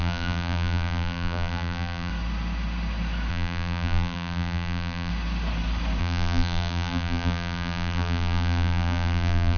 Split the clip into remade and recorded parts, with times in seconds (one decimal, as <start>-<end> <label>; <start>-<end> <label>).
0.0-2.1 remade; 2.1-3.3 recorded; 3.3-5.1 remade; 5.1-6.0 recorded; 6.0-9.6 remade